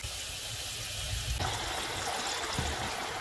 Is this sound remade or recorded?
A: recorded